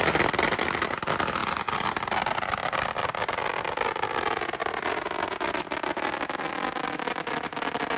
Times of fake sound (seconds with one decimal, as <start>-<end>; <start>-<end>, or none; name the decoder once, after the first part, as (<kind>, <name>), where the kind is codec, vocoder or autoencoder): none